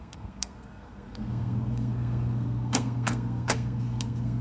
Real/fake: fake